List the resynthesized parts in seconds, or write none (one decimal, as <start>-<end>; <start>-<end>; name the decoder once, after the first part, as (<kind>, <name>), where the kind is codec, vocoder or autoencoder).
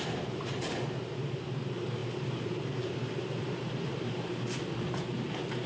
0.0-5.7 (vocoder, BigVGAN v2)